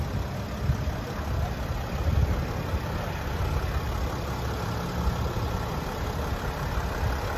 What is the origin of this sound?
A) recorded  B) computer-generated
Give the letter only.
A